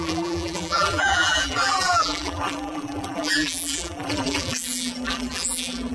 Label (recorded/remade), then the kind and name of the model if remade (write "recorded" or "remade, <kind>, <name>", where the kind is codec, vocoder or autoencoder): remade, vocoder, BigVGAN v2